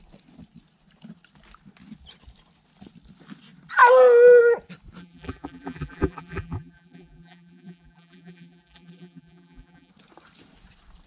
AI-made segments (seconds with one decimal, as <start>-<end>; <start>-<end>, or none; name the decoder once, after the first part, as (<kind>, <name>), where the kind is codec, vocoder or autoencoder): 5.0-9.9 (vocoder, BigVGAN v2)